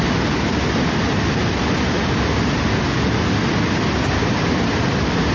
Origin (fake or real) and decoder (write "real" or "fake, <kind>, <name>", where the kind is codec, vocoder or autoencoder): real